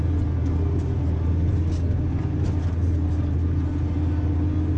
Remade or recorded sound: recorded